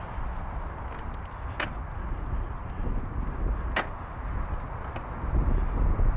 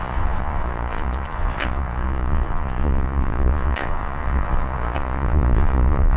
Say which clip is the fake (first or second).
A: second